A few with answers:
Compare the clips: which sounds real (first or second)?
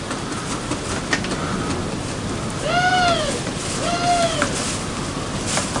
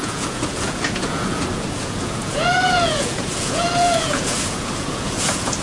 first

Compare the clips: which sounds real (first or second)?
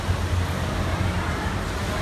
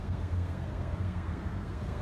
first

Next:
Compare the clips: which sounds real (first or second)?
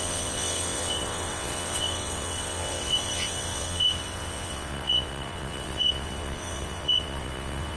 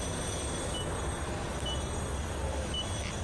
second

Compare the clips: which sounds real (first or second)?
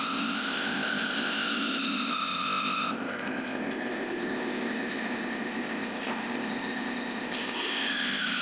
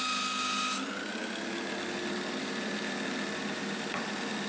second